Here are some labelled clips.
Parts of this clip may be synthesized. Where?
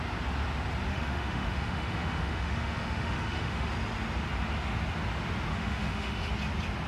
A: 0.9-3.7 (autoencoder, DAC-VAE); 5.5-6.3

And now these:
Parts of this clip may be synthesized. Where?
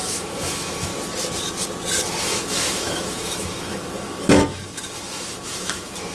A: 0.0-0.9 (autoencoder, DAC-VAE); 2.2-6.1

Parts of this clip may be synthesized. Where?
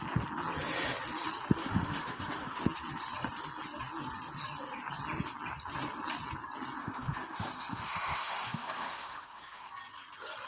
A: 1.6-2.6 (autoencoder, DAC-VAE); 6.8-9.7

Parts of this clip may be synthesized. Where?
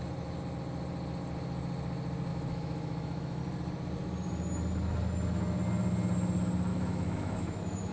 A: 2.3-3.4 (autoencoder, DAC-VAE); 6.7-7.9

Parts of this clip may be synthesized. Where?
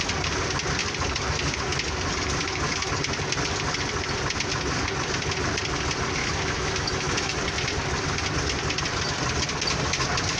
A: 6.2-7.4 (autoencoder, DAC-VAE)